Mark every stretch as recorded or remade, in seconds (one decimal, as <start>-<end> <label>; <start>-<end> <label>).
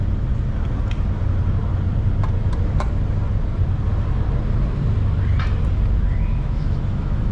0.0-6.3 recorded; 6.3-7.3 remade